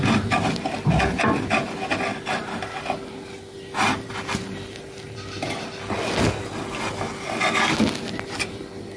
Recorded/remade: recorded